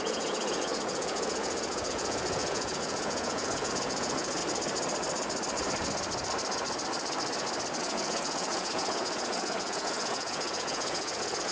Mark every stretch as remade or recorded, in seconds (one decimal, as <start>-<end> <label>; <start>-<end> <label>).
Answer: 0.0-4.4 remade; 4.4-7.8 recorded; 7.8-11.5 remade

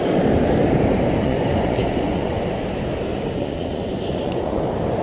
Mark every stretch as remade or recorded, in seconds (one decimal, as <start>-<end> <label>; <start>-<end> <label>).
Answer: 0.0-1.2 recorded; 1.2-2.6 remade; 2.6-3.1 recorded; 3.1-4.6 remade; 4.6-5.0 recorded

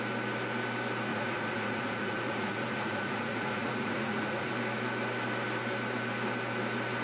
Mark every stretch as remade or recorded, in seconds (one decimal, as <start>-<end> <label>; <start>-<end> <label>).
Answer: 0.0-1.1 recorded; 1.1-4.5 remade; 4.5-7.0 recorded

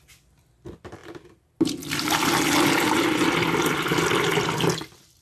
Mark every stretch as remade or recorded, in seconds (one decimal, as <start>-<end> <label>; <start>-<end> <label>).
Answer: 0.0-5.2 recorded

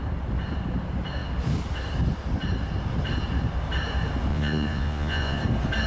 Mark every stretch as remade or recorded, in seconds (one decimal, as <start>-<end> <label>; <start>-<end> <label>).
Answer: 0.0-4.3 recorded; 4.3-5.4 remade; 5.4-5.9 recorded

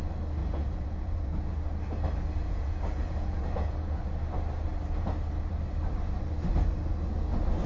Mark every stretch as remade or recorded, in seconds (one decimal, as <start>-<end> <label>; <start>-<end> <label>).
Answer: 0.0-0.4 recorded; 0.4-1.5 remade; 1.5-2.4 recorded; 2.4-4.0 remade; 4.0-7.7 recorded

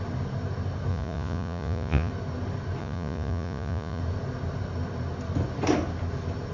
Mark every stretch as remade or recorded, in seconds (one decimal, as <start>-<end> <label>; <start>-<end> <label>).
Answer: 0.0-0.9 recorded; 0.9-2.1 remade; 2.1-2.8 recorded; 2.8-4.0 remade; 4.0-6.5 recorded

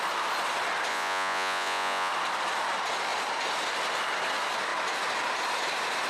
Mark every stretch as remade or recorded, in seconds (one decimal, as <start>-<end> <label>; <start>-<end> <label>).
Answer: 0.0-0.9 recorded; 0.9-2.1 remade; 2.1-6.1 recorded